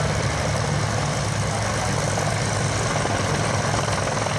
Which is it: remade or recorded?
recorded